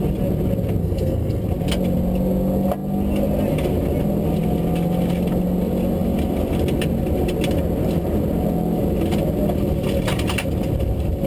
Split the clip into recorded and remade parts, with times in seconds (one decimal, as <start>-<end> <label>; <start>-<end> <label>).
0.0-0.8 recorded; 0.8-1.4 remade; 1.4-11.3 recorded